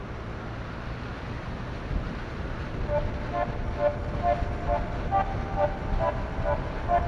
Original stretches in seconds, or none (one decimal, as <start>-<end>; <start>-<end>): 0.0-7.1